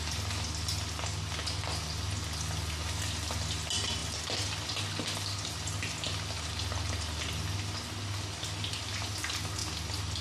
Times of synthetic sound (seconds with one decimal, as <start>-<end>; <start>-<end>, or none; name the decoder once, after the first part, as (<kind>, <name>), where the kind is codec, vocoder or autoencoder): none